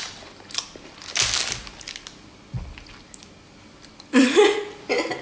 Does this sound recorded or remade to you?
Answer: recorded